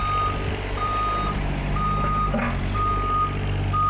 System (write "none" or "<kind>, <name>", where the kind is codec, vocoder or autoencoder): none